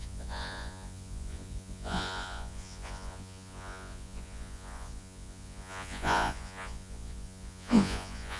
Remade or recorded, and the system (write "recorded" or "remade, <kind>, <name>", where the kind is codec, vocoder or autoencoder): remade, vocoder, Vocos